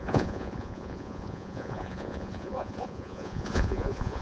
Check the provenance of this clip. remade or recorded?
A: remade